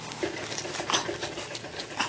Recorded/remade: recorded